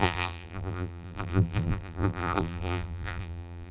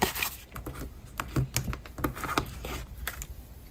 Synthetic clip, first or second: first